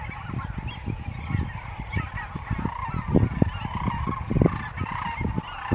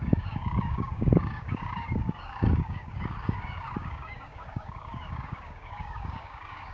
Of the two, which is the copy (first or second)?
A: second